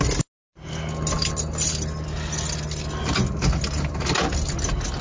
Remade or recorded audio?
recorded